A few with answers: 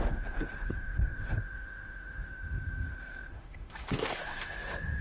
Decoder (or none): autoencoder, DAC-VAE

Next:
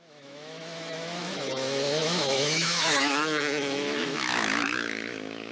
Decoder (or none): autoencoder, DAC-VAE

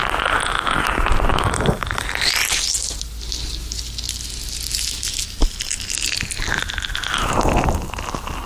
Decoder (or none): none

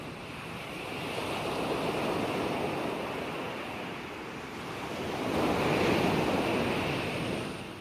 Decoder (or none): none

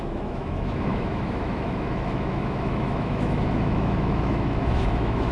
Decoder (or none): autoencoder, DAC-VAE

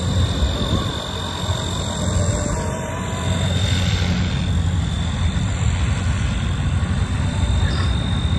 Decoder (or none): none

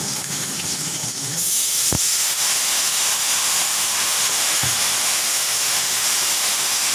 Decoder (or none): autoencoder, DAC-VAE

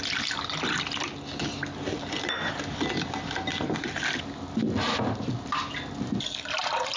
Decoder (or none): none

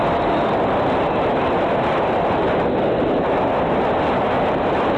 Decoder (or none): none